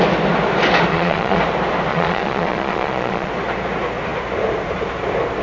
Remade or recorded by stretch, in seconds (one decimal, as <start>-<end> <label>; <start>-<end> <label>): 0.0-0.9 recorded; 0.9-1.4 remade; 1.4-1.9 recorded; 1.9-3.3 remade; 3.3-5.4 recorded